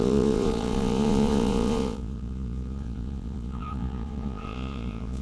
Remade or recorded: remade